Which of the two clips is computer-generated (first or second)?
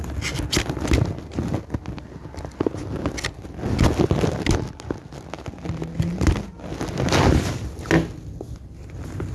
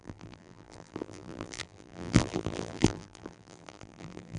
second